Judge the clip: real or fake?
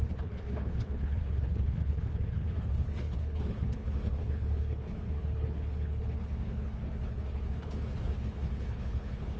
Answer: fake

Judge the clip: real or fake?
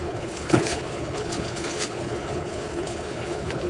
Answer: fake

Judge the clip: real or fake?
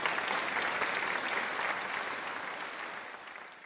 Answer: real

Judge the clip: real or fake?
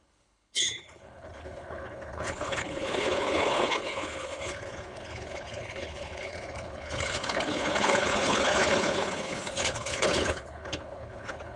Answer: fake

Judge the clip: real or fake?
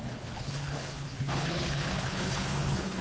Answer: fake